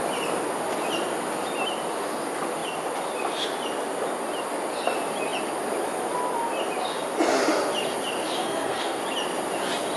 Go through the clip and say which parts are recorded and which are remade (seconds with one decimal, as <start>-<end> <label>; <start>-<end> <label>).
0.0-8.4 recorded; 8.4-9.0 remade; 9.0-10.0 recorded